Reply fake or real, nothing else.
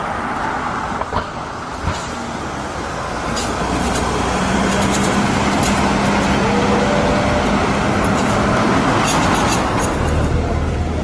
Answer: real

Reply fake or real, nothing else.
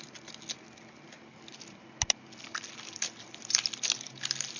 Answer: real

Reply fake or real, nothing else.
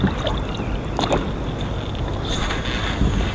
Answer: real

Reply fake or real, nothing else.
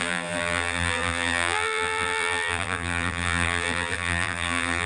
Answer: fake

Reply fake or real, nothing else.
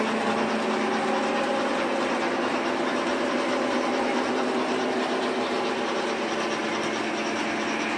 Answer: fake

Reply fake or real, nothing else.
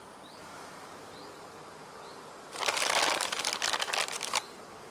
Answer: real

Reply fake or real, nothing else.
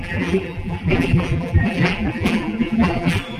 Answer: fake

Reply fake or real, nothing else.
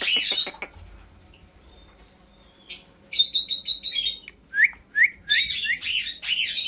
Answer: real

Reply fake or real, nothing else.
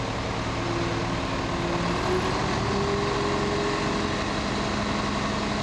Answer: real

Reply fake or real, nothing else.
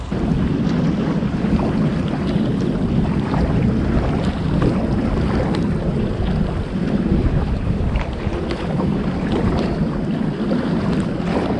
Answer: fake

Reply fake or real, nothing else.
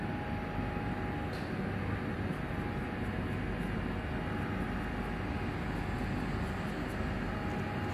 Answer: real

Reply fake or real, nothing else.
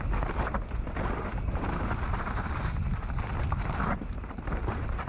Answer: fake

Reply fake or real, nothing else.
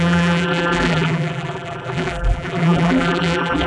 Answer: fake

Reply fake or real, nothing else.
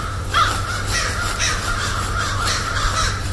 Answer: fake